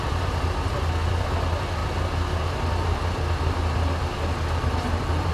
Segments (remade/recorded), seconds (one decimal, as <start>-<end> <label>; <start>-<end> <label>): 0.0-5.3 recorded